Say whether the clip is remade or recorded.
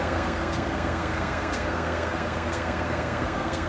remade